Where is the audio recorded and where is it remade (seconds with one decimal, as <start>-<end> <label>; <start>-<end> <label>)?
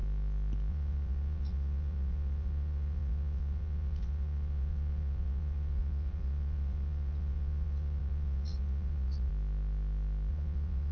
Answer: 0.0-0.7 recorded; 0.7-9.3 remade; 9.3-10.3 recorded; 10.3-10.9 remade